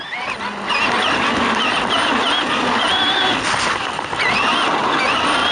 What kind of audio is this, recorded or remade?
recorded